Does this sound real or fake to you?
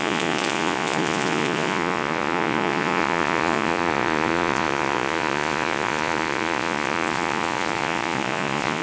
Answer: fake